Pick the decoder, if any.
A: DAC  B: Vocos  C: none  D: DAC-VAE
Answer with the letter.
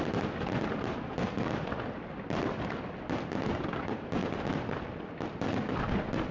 C